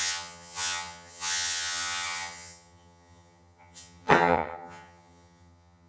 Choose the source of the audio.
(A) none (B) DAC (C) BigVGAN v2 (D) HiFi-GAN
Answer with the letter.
D